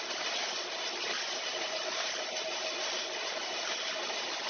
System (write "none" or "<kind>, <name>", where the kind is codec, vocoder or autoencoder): none